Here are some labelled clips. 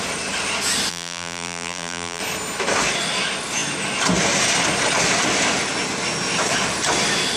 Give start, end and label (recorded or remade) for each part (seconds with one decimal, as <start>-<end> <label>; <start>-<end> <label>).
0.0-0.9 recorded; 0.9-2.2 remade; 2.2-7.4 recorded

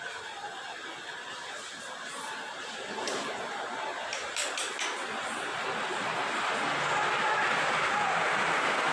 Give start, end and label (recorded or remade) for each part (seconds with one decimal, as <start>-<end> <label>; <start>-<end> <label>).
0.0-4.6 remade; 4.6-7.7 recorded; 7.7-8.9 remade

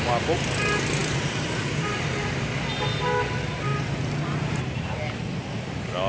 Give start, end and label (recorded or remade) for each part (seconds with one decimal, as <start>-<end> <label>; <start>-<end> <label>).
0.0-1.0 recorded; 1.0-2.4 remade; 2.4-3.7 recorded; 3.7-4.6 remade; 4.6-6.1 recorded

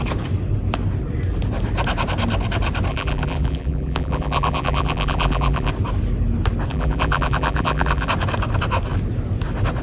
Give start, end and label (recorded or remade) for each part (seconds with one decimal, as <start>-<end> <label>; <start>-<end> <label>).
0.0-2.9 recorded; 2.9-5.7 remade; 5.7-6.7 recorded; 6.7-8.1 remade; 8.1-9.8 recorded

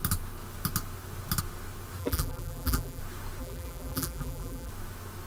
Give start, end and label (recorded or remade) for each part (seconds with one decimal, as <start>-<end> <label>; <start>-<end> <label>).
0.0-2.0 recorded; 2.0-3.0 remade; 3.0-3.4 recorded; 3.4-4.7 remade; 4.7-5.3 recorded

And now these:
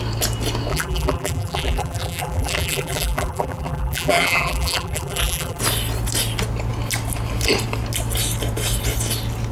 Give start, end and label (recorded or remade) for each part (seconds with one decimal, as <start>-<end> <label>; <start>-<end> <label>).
0.0-0.7 recorded; 0.7-5.6 remade; 5.6-9.5 recorded

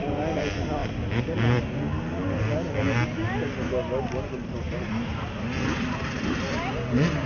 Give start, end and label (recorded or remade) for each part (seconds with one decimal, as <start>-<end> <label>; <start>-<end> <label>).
0.0-0.8 remade; 0.8-4.0 recorded; 4.0-7.3 remade

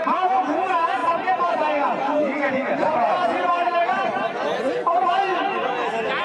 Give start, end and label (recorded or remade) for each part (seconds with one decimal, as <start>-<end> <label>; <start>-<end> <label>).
0.0-5.3 remade; 5.3-6.2 recorded